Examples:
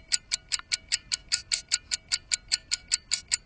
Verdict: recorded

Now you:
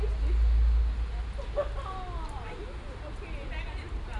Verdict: recorded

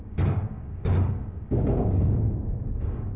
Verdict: remade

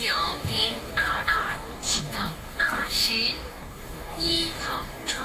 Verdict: remade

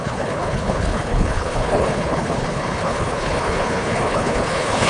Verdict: remade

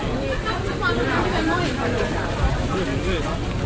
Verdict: recorded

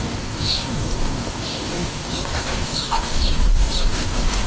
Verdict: remade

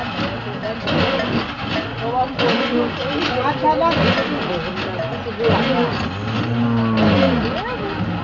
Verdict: recorded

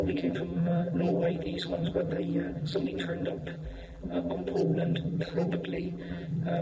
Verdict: remade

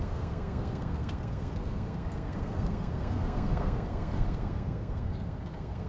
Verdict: remade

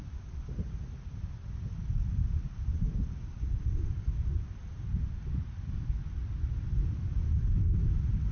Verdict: recorded